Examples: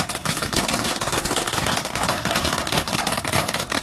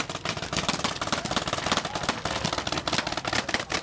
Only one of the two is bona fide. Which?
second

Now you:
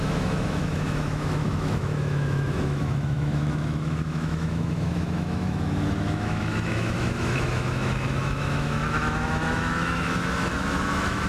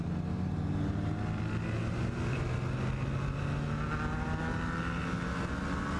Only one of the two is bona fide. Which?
second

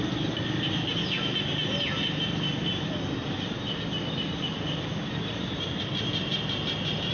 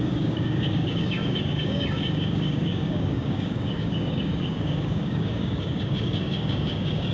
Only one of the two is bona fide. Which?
first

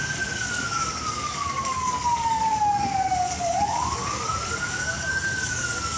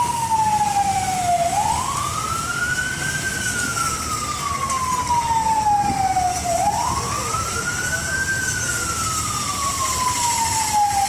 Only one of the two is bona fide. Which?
second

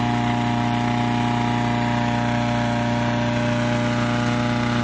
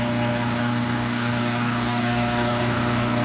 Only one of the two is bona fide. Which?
first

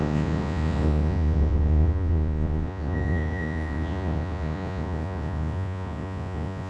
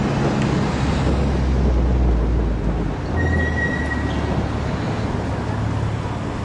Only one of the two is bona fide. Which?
second